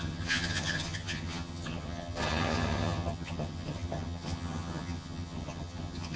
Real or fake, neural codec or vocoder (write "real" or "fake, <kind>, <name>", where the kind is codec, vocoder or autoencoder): fake, vocoder, HiFi-GAN